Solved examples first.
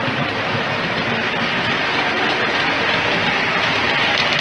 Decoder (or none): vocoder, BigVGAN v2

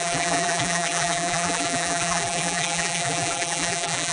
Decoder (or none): vocoder, BigVGAN v2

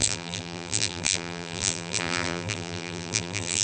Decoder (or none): vocoder, BigVGAN v2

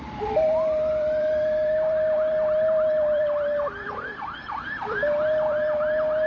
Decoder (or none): vocoder, BigVGAN v2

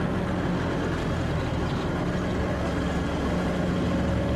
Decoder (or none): none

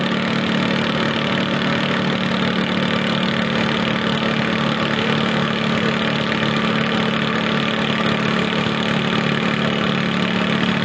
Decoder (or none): none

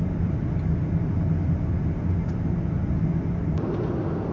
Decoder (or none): none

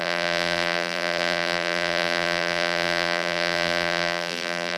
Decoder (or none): vocoder, BigVGAN v2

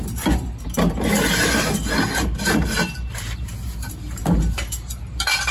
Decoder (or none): vocoder, BigVGAN v2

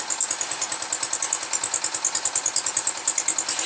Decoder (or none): none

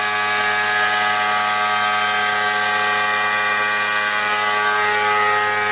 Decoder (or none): none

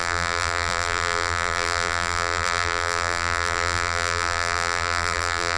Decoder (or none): vocoder, BigVGAN v2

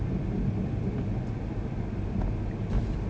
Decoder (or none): none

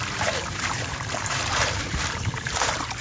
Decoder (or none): vocoder, BigVGAN v2